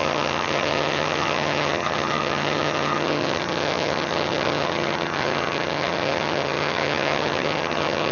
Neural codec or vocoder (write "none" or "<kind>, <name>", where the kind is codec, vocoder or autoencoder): vocoder, HiFi-GAN